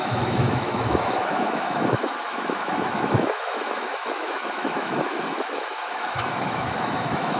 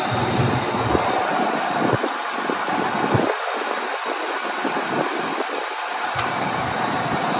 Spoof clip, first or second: first